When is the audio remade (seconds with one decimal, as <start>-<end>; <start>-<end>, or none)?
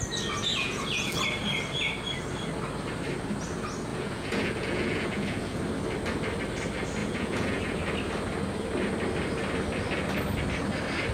0.5-1.1; 3.9-5.6; 7.0-7.8